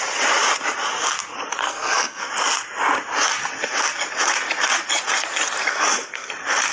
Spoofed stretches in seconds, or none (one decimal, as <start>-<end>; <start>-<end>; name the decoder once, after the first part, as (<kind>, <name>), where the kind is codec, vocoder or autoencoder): 1.6-2.3 (codec, SNAC); 5.7-6.3